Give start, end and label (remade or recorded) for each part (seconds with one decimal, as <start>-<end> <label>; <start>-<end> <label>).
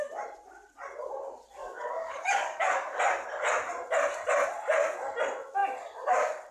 0.0-1.6 recorded; 1.6-3.0 remade; 3.0-6.5 recorded